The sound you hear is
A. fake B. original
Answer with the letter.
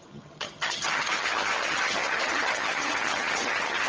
A